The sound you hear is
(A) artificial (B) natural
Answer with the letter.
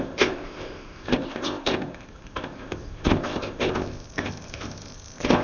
A